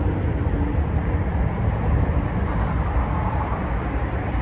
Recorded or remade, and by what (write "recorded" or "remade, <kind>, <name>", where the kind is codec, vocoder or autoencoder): remade, vocoder, BigVGAN v2